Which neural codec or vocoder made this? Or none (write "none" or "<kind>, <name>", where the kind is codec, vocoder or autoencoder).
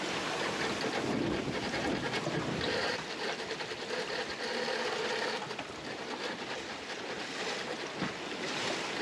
none